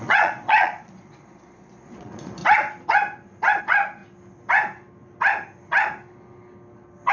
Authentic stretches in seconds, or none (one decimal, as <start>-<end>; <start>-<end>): 2.4-3.6; 4.0-7.1